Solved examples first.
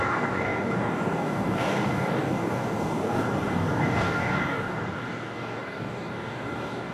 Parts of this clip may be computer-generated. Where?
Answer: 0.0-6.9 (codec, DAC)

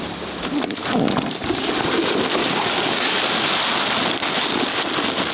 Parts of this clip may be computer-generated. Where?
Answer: 2.4-3.2 (codec, DAC)

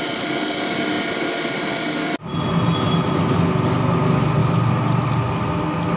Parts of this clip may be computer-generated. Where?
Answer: none

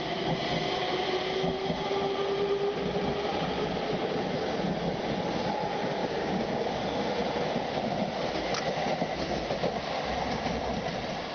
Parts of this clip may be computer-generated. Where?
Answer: 6.0-6.8 (codec, DAC)

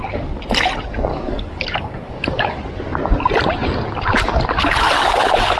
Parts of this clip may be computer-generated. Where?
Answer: 1.1-2.6 (codec, DAC)

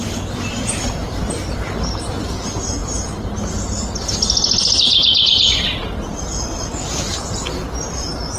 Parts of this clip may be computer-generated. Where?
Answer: none

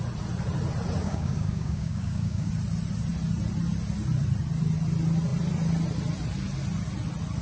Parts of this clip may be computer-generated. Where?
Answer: 1.0-2.5 (codec, DAC)

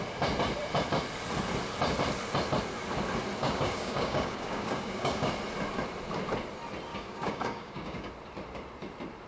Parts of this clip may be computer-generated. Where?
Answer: 3.4-5.3 (codec, DAC); 6.9-8.1